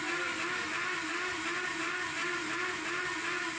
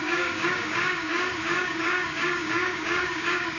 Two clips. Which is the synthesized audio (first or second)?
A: second